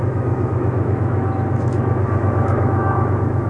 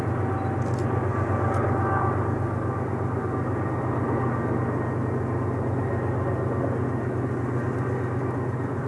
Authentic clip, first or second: second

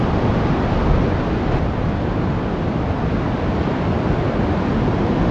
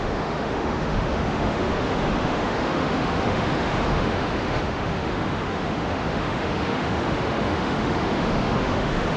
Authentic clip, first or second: first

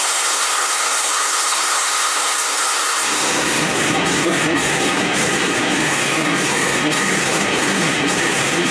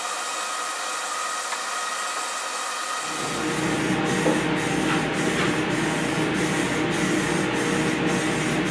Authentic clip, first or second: second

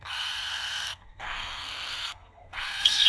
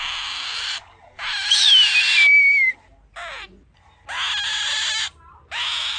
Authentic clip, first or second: second